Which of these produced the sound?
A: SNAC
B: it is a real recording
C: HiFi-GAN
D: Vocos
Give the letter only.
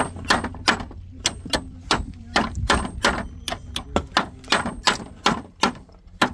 B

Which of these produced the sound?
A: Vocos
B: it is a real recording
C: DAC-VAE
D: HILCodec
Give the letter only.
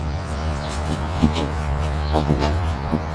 A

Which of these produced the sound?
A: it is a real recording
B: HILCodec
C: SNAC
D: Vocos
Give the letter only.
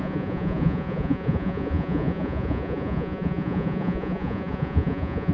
D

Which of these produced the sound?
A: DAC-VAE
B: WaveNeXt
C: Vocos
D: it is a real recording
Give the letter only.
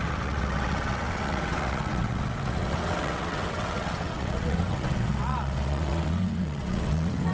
B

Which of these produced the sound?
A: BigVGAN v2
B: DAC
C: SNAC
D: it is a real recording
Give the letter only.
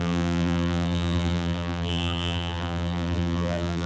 A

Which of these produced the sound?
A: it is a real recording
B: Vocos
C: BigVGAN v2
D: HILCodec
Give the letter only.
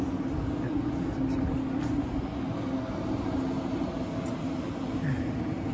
A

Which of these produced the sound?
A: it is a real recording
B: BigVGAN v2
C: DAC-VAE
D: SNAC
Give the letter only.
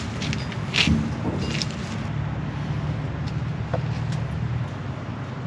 A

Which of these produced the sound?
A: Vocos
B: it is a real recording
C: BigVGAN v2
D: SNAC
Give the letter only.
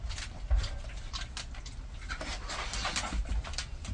B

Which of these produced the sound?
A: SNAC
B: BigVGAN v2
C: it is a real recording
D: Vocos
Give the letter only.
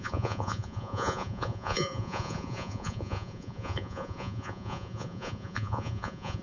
D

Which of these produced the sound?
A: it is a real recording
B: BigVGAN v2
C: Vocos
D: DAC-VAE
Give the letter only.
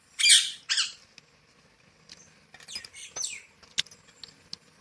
A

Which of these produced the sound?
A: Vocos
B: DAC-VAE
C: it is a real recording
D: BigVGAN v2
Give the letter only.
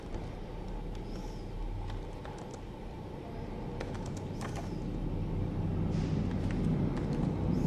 C